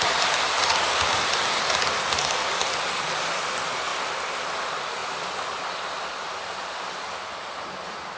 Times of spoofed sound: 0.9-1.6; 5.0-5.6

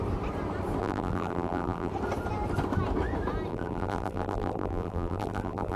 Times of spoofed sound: 0.8-1.9; 3.5-5.8

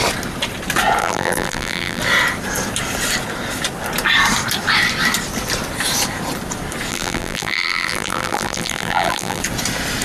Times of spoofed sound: 1.0-2.0; 6.9-9.4

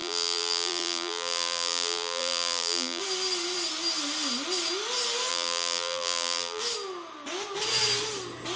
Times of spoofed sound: 0.0-3.0; 5.3-6.6